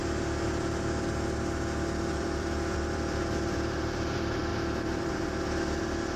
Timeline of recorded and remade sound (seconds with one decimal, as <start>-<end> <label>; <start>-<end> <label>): 0.0-2.2 recorded; 2.2-6.2 remade